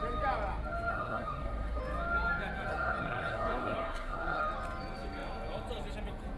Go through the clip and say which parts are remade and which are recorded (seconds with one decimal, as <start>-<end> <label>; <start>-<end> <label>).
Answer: 0.0-0.9 recorded; 0.9-1.8 remade; 1.8-2.7 recorded; 2.7-4.4 remade; 4.4-6.4 recorded

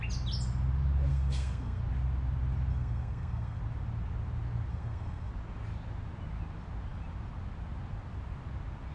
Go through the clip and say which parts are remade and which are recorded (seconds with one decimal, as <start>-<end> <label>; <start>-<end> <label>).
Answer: 0.0-1.1 recorded; 1.1-1.8 remade; 1.8-2.7 recorded; 2.7-3.6 remade; 3.6-4.7 recorded; 4.7-5.3 remade; 5.3-8.9 recorded